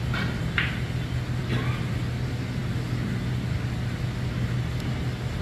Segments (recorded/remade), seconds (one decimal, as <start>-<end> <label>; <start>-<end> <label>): 0.0-5.4 recorded